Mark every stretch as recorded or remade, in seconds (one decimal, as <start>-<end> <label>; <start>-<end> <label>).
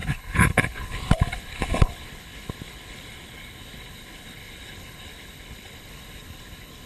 0.0-6.9 remade